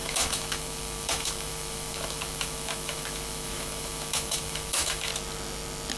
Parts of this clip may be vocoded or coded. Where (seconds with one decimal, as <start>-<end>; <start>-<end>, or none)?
0.0-5.1